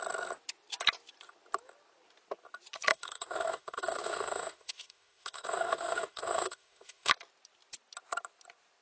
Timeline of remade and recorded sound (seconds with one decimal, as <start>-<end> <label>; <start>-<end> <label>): 0.0-2.9 recorded; 2.9-7.1 remade; 7.1-8.8 recorded